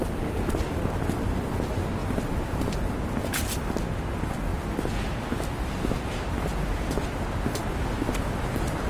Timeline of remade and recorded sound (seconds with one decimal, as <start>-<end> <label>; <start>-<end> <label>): 0.0-8.9 recorded